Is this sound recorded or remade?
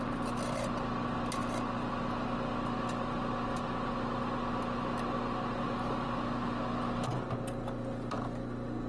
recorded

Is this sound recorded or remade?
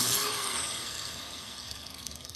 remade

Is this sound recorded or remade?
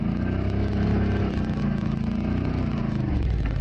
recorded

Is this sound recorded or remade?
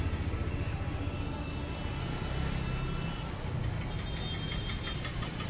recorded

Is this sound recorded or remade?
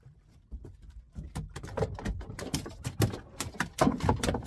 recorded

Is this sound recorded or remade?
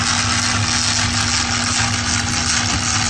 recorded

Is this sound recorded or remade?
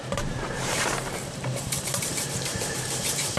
remade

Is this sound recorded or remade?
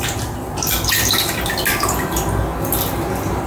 recorded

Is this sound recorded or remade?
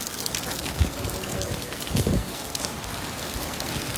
remade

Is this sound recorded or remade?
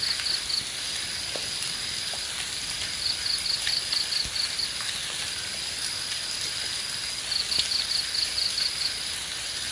recorded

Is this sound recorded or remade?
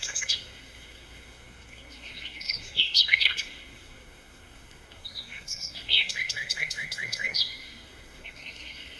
remade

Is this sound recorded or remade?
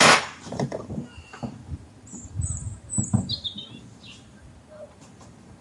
remade